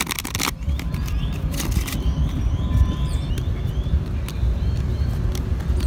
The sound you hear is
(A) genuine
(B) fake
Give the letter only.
B